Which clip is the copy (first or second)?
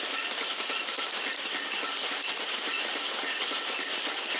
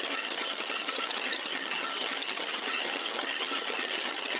second